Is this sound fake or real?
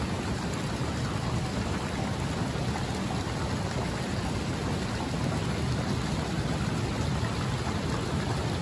real